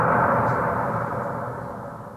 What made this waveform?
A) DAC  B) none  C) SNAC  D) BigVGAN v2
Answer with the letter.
B